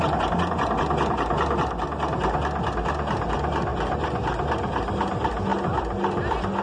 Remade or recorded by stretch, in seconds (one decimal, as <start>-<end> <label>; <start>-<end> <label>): 0.0-6.6 recorded